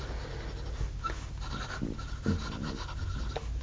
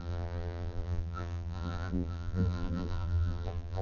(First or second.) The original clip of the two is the first